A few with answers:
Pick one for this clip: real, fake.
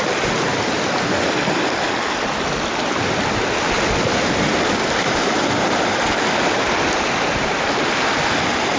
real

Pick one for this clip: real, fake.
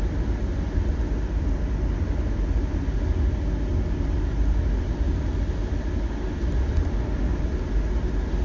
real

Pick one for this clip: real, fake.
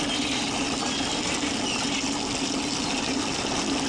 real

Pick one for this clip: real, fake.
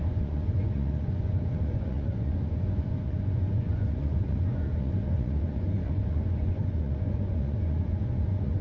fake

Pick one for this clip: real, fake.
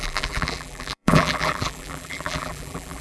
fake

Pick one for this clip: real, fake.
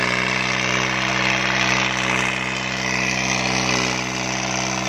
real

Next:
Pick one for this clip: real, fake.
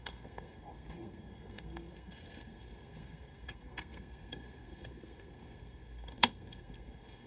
fake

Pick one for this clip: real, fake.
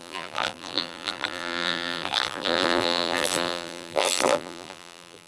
fake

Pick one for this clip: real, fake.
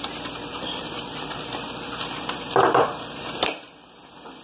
real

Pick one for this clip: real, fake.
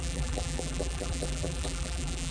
fake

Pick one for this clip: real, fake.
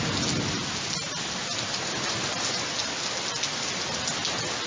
real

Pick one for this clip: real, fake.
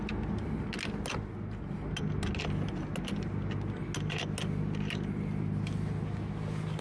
real